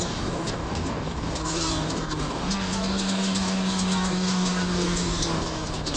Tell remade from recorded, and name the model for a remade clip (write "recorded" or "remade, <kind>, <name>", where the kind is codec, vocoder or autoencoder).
remade, codec, DAC